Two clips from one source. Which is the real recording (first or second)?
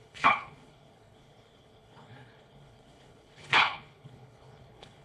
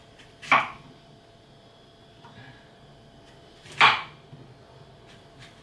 second